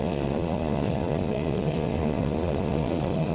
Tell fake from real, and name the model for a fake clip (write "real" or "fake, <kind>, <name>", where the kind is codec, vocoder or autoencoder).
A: fake, vocoder, Vocos